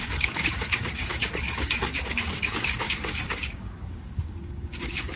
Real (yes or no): no